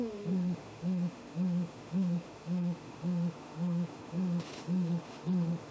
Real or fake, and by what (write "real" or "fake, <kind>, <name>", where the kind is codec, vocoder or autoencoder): fake, autoencoder, DAC-VAE